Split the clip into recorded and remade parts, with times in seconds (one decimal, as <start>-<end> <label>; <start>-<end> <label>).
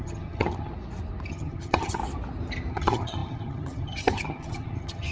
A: 0.0-0.7 remade; 0.7-1.3 recorded; 1.3-2.0 remade; 2.0-2.7 recorded; 2.7-5.1 remade